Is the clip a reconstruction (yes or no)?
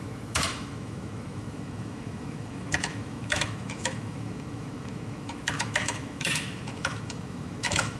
yes